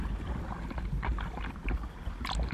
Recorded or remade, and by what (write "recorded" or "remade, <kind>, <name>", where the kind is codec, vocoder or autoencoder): remade, vocoder, BigVGAN v2